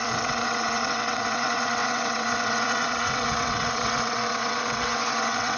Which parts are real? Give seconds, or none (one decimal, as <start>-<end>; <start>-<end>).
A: none